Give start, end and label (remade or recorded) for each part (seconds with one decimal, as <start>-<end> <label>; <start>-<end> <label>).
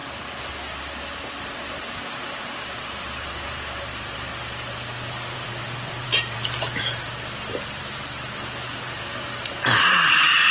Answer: 0.0-2.1 recorded; 2.1-4.3 remade; 4.3-5.1 recorded; 5.1-10.5 remade